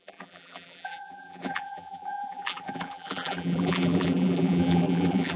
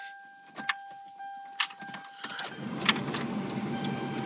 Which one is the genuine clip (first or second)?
second